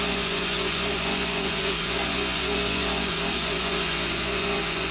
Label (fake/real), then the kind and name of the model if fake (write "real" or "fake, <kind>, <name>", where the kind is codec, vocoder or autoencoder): fake, vocoder, Vocos